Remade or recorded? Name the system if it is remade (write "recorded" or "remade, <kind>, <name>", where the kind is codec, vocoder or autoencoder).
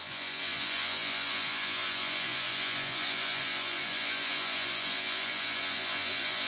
remade, vocoder, Vocos